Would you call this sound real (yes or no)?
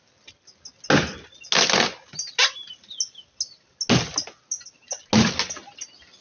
yes